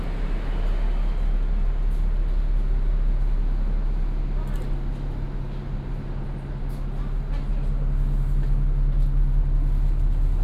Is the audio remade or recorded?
recorded